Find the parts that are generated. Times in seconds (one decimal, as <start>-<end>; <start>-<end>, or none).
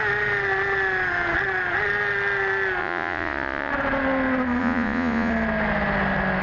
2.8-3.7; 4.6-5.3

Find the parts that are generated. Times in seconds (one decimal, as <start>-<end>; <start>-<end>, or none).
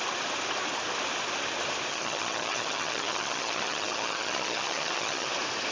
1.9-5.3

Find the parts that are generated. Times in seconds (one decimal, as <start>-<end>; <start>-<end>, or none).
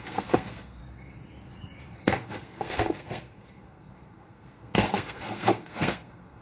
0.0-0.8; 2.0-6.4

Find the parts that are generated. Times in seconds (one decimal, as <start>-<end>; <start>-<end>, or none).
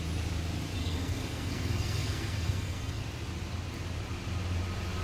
0.8-3.0